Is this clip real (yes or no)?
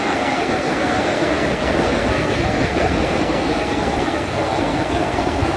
no